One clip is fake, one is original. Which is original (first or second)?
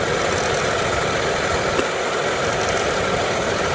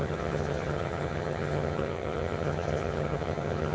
first